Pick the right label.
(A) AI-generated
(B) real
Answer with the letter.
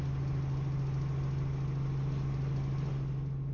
B